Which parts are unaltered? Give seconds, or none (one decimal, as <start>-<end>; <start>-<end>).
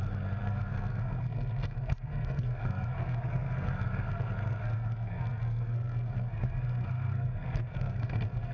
none